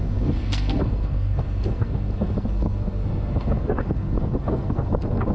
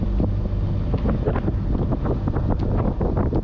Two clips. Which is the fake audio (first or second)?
first